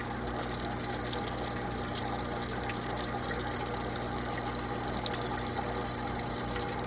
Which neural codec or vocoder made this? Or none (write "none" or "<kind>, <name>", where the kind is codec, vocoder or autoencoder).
none